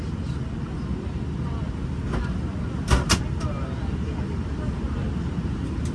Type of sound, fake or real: real